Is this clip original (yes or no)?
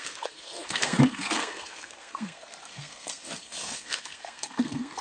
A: no